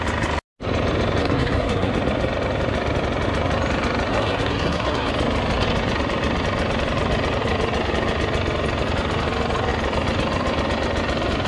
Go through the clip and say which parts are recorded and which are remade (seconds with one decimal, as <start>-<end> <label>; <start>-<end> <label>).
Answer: 0.0-1.2 recorded; 1.2-1.9 remade; 1.9-4.1 recorded; 4.1-5.1 remade; 5.1-11.5 recorded